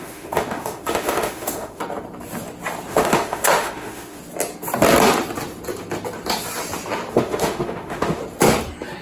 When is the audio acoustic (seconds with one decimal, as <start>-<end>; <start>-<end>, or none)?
1.8-2.9; 4.2-7.1; 8.2-9.0